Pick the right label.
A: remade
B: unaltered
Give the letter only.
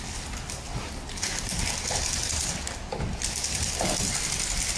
B